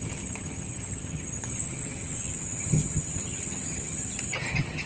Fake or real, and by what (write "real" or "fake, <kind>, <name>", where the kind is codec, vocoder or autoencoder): fake, vocoder, HiFi-GAN